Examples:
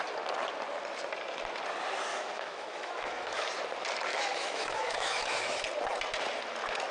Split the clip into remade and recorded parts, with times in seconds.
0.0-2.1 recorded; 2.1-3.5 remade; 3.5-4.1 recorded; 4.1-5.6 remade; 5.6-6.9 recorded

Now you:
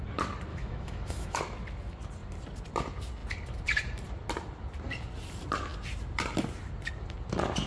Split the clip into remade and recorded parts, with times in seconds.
0.0-0.5 recorded; 0.5-1.4 remade; 1.4-7.7 recorded

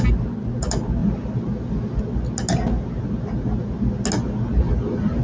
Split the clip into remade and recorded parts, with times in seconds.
0.0-5.2 recorded

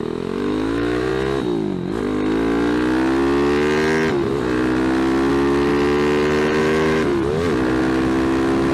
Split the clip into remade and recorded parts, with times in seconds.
0.0-1.1 remade; 1.1-5.3 recorded; 5.3-5.7 remade; 5.7-6.6 recorded; 6.6-7.1 remade; 7.1-7.8 recorded; 7.8-8.7 remade

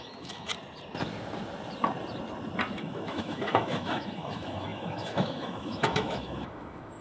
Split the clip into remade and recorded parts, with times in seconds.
0.0-0.5 remade; 0.5-2.8 recorded; 2.8-7.0 remade

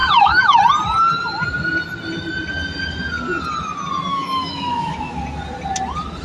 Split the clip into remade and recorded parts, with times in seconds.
0.0-0.6 remade; 0.6-4.1 recorded; 4.1-5.2 remade; 5.2-6.2 recorded

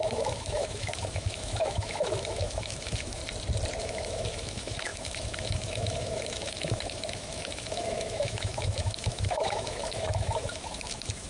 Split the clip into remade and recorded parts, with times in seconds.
0.0-3.2 remade; 3.2-3.8 recorded; 3.8-11.3 remade

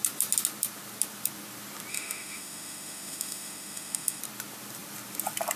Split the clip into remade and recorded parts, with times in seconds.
0.0-1.9 recorded; 1.9-4.2 remade; 4.2-5.6 recorded